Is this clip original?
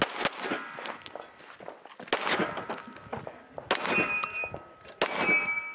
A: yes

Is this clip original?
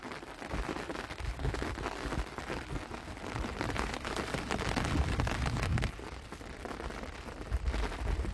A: yes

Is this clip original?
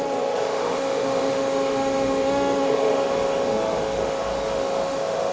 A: no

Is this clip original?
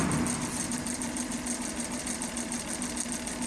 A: yes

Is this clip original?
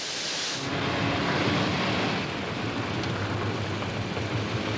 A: yes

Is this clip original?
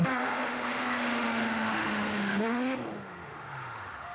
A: no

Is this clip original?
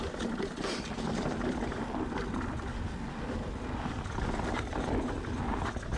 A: yes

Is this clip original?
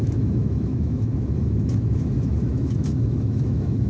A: no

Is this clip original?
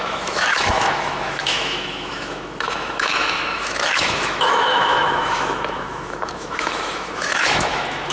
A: no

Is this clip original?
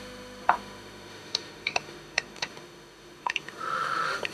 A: no